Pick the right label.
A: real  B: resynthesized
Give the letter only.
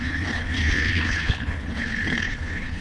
B